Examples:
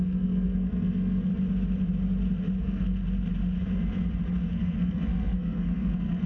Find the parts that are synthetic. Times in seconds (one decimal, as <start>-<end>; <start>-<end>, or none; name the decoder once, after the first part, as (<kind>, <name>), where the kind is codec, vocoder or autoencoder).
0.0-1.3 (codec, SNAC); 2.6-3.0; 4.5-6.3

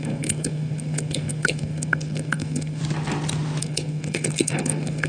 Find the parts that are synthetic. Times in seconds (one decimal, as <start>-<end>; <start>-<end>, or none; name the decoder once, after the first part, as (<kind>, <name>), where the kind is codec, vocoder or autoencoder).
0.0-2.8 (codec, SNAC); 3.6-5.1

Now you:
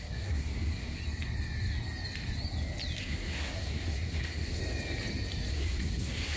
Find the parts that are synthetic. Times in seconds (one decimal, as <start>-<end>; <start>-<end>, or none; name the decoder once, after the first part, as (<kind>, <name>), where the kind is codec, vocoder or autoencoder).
0.0-1.0 (codec, SNAC); 3.0-4.6; 5.5-6.4

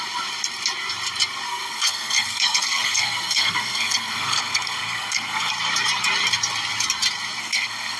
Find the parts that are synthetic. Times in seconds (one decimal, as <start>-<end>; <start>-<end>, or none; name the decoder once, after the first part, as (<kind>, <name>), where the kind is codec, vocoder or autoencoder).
1.5-5.5 (codec, SNAC); 7.4-8.0

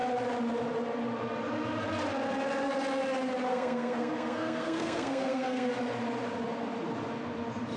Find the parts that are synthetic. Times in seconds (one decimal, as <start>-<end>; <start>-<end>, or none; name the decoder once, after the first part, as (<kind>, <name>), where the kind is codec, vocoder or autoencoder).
3.5-5.7 (codec, SNAC)

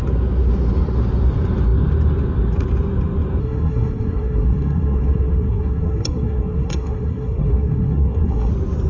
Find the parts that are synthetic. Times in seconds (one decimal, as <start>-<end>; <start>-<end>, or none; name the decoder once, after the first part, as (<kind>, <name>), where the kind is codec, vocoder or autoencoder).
3.4-8.5 (codec, SNAC)

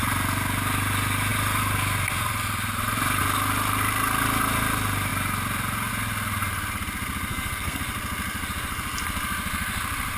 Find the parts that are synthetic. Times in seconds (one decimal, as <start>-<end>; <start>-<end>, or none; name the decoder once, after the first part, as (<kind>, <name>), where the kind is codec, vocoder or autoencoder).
7.3-7.8 (codec, SNAC)